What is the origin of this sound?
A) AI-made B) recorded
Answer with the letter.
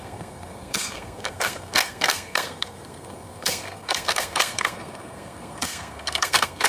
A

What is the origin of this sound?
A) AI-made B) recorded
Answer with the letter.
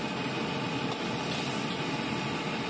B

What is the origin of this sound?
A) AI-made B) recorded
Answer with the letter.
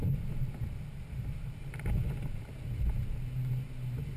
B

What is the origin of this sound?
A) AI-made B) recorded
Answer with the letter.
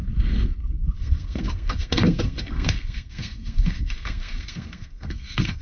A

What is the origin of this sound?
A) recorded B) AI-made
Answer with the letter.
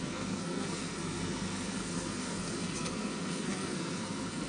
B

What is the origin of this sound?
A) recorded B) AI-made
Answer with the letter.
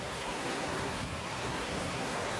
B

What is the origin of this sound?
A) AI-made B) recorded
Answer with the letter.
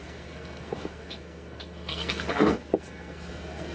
A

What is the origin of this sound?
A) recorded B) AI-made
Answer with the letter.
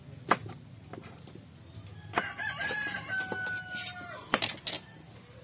A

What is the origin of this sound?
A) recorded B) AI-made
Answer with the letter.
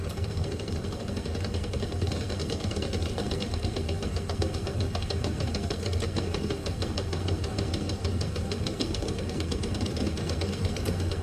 B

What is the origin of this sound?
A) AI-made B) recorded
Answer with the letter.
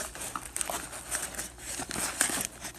B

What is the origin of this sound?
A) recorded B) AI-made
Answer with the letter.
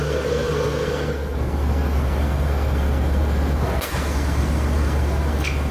B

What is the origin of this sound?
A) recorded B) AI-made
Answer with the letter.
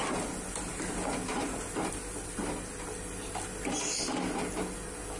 A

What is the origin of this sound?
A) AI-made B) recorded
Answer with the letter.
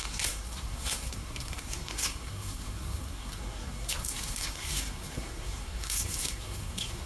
A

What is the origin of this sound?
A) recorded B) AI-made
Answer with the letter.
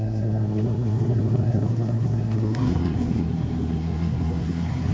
B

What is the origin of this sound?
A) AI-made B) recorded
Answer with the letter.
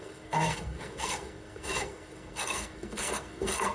A